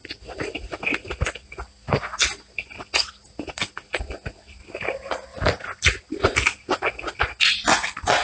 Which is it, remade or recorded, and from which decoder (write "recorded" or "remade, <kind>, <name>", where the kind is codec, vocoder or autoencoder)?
recorded